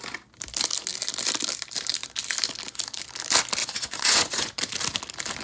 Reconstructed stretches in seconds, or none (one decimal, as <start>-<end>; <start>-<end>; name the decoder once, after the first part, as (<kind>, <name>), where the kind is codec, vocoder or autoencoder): 3.6-4.6 (vocoder, Vocos)